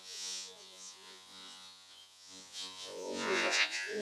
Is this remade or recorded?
remade